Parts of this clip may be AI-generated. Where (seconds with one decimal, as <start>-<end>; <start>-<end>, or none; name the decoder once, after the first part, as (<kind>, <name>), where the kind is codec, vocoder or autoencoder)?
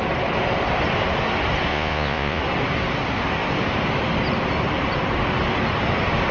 1.7-2.4 (vocoder, Vocos)